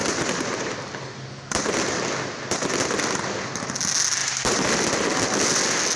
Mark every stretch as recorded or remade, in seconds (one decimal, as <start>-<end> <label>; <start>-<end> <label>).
0.0-6.0 recorded